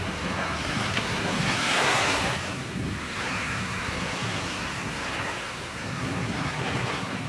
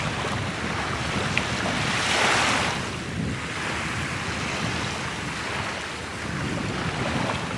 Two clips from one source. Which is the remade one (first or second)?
first